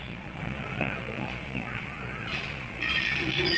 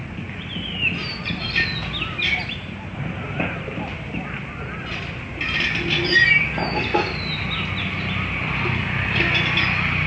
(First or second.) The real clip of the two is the second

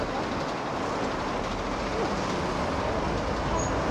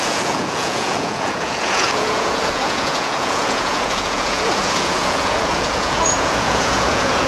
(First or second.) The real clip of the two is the first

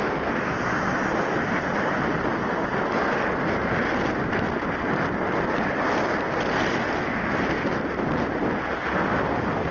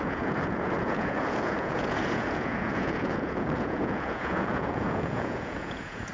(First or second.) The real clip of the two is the first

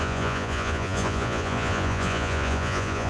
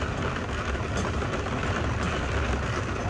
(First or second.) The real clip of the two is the second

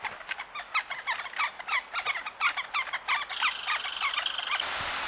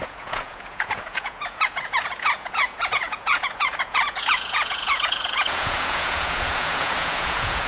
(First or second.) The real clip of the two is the first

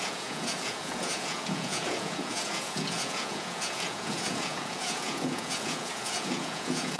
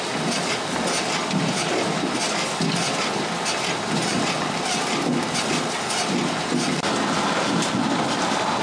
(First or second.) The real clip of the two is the second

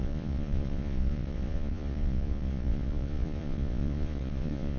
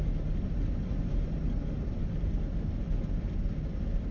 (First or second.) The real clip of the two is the second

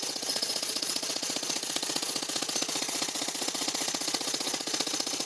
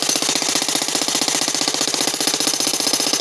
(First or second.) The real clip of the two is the second